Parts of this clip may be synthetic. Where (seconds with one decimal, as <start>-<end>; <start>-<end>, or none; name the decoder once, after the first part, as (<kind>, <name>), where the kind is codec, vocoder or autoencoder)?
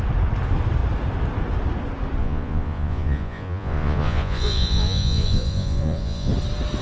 2.2-6.3 (vocoder, Vocos)